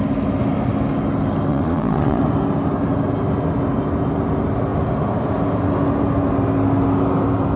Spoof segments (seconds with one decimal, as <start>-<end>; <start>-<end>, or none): 1.5-2.2